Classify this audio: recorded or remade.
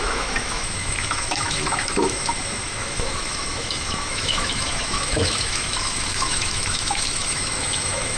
remade